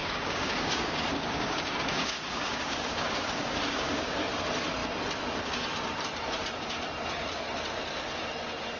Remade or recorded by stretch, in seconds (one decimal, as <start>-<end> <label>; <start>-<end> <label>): 0.0-4.3 remade; 4.3-8.8 recorded